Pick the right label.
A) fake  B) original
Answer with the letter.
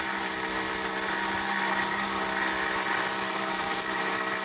B